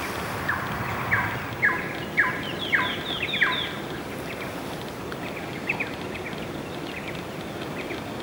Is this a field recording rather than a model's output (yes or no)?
yes